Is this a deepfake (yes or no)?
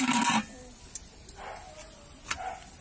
no